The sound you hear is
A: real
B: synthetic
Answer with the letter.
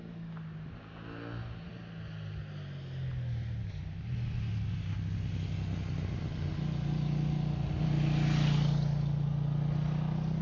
A